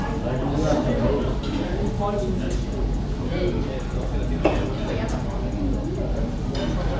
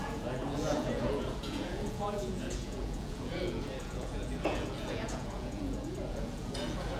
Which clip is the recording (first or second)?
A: first